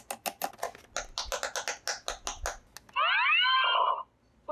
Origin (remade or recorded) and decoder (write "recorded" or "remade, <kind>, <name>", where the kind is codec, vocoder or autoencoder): recorded